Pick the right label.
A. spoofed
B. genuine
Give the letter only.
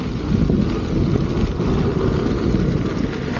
B